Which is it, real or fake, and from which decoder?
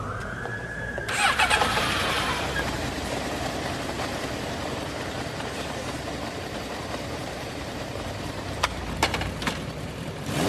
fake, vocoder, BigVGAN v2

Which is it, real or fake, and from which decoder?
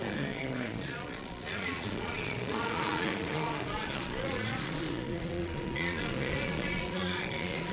fake, vocoder, Vocos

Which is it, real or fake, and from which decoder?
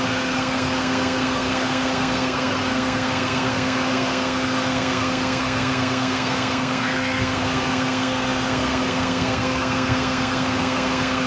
fake, codec, SNAC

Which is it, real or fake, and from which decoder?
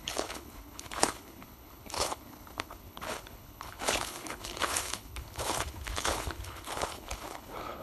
fake, codec, HILCodec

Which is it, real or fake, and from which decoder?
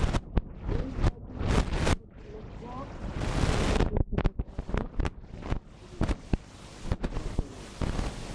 real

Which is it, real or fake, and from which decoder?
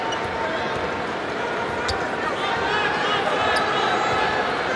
real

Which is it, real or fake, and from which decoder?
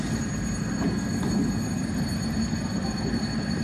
real